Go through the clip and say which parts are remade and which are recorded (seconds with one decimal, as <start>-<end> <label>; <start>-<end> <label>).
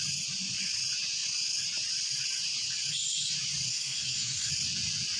0.0-3.7 recorded; 3.7-4.5 remade; 4.5-5.2 recorded